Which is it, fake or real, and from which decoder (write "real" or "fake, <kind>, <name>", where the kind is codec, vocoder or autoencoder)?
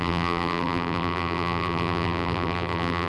fake, vocoder, BigVGAN v2